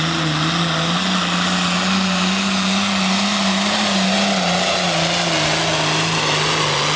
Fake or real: real